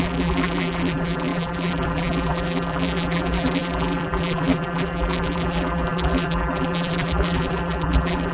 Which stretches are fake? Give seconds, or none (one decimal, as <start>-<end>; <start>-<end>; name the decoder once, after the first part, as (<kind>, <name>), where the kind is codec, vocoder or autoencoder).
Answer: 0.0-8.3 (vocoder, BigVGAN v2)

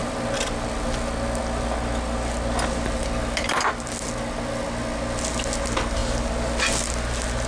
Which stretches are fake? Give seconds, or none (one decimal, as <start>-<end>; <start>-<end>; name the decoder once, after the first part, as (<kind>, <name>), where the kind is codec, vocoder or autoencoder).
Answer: 0.0-1.4 (vocoder, BigVGAN v2); 3.0-4.6

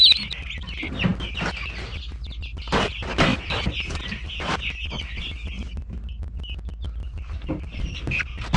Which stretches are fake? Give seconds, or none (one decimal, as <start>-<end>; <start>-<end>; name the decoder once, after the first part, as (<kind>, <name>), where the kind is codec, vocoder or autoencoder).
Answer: 3.3-4.3 (vocoder, BigVGAN v2); 7.0-8.0

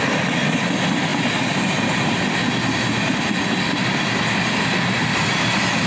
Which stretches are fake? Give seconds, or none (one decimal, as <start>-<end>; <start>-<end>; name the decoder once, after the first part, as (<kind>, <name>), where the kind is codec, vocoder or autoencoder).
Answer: none

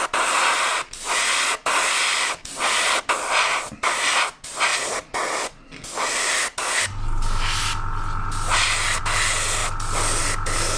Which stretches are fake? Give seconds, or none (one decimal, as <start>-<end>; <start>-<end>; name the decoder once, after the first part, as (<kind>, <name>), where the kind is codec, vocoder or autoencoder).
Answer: none